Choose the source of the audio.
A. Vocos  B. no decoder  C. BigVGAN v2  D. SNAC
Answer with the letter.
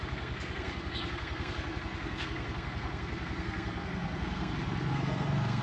D